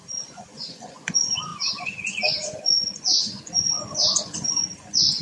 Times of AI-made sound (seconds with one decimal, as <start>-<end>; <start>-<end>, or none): 0.0-5.2